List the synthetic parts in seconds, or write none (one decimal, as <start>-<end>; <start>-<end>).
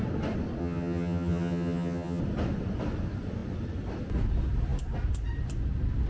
0.6-2.2